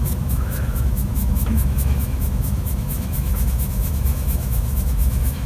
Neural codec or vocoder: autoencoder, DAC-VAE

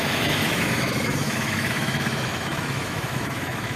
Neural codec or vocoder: autoencoder, DAC-VAE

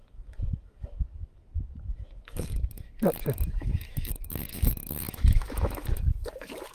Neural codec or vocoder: autoencoder, DAC-VAE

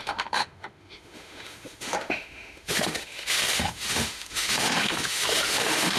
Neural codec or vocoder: autoencoder, DAC-VAE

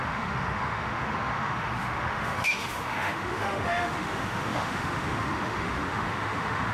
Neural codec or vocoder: autoencoder, DAC-VAE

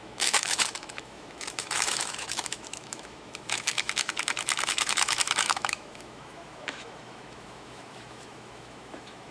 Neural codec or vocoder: autoencoder, DAC-VAE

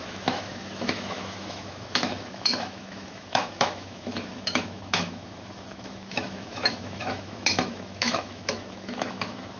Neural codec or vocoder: autoencoder, DAC-VAE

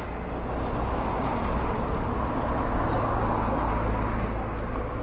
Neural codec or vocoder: none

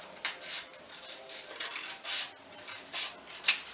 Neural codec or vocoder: none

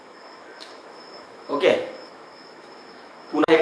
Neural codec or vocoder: autoencoder, DAC-VAE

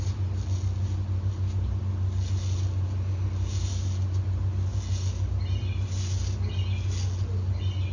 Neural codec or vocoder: none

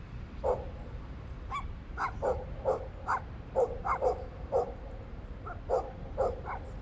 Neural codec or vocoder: none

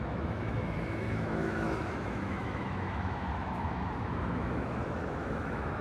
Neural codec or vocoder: autoencoder, DAC-VAE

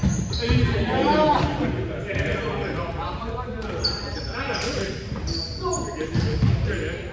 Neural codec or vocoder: none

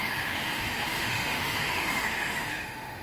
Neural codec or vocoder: autoencoder, DAC-VAE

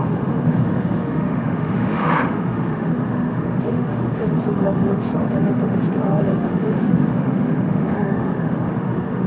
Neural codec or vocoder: autoencoder, DAC-VAE